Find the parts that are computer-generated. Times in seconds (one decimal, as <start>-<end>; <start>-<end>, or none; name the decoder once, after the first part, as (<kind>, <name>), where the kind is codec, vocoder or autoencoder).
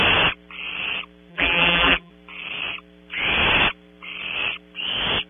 1.3-2.1 (vocoder, BigVGAN v2)